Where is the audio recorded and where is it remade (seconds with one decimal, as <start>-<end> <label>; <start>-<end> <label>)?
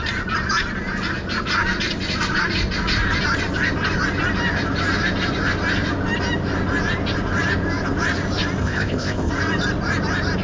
0.0-8.6 recorded; 8.6-9.3 remade; 9.3-10.4 recorded